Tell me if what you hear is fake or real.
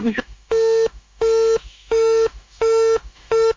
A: fake